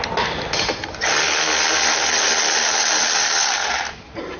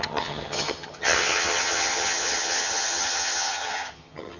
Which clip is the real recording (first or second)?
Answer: first